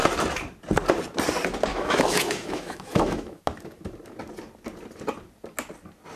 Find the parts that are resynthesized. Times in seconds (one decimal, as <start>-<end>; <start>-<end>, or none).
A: 1.7-3.4